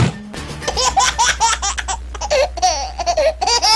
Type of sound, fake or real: real